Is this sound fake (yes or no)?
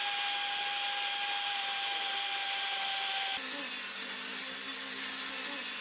no